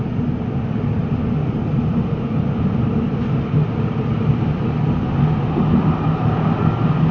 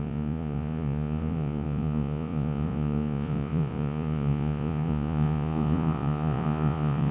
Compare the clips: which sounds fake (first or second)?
second